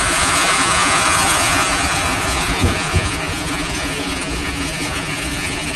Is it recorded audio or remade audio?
remade